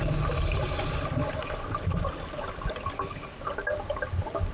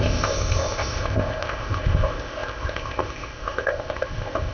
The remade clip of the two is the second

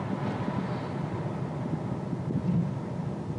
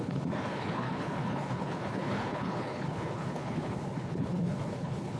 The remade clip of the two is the second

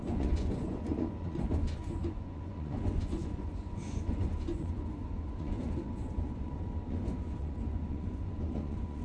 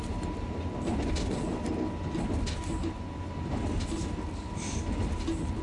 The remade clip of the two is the first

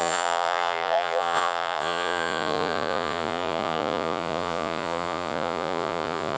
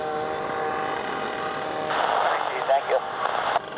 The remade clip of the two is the first